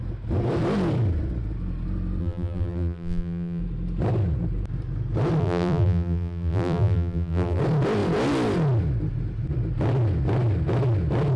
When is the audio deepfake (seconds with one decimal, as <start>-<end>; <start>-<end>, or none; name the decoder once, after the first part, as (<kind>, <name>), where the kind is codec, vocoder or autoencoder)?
2.2-3.6 (vocoder, BigVGAN v2); 5.4-7.6

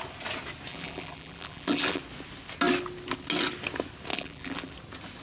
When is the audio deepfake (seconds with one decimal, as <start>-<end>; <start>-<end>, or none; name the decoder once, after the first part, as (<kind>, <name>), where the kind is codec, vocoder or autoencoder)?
0.7-2.0 (vocoder, BigVGAN v2); 4.1-4.7

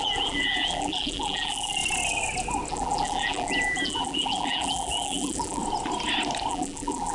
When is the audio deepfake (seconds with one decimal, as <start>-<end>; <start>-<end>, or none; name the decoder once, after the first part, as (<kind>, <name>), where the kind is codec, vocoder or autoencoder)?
0.0-1.8 (vocoder, BigVGAN v2); 2.7-5.6; 6.5-7.1

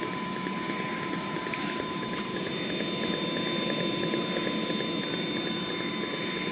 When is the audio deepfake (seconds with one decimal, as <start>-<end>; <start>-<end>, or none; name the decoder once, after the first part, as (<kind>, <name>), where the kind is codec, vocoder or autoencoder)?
0.0-2.5 (vocoder, BigVGAN v2)

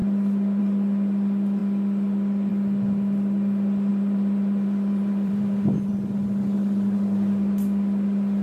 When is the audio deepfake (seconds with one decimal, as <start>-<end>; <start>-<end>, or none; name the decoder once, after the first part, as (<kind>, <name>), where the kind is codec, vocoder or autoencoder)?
3.9-5.9 (vocoder, BigVGAN v2)

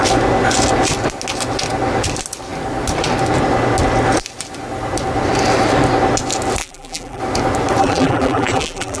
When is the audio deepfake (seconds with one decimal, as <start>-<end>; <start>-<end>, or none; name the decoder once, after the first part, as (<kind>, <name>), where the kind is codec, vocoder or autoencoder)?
6.6-7.2 (vocoder, BigVGAN v2); 7.8-9.0

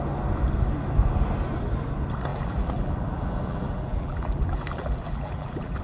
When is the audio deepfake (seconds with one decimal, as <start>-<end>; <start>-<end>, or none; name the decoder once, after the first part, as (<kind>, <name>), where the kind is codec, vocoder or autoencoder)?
2.3-5.8 (vocoder, BigVGAN v2)

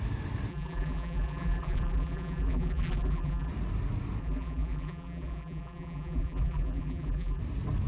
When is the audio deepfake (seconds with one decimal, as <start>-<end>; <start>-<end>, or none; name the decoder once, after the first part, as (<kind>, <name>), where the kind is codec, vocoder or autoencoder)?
0.5-3.5 (vocoder, BigVGAN v2); 4.2-7.4